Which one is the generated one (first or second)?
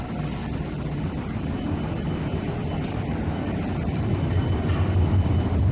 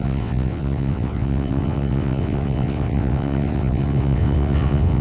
second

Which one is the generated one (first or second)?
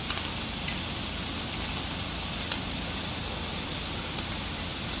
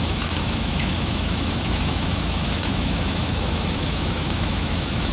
second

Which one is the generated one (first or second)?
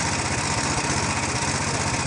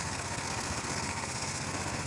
second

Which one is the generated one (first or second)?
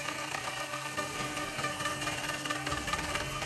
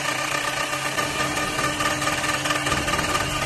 first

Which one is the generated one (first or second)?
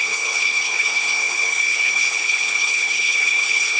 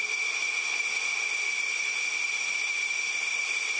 first